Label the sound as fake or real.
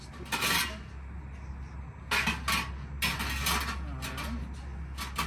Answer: real